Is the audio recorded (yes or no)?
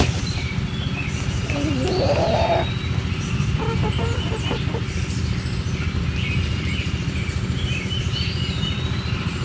yes